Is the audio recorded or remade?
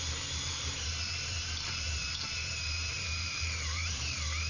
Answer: remade